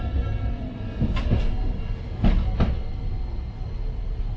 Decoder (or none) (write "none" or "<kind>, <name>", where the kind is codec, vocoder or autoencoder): none